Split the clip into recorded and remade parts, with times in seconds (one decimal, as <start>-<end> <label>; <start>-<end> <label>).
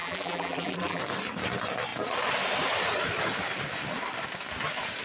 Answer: 0.0-1.0 remade; 1.0-5.0 recorded